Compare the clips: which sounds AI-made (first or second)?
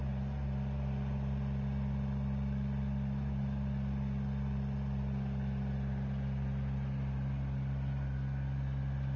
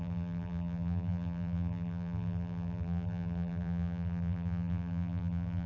second